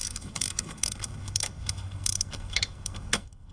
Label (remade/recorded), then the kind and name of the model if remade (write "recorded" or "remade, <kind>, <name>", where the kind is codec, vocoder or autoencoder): remade, codec, SNAC